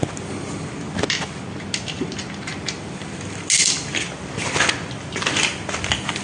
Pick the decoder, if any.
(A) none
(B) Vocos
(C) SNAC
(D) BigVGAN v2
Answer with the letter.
A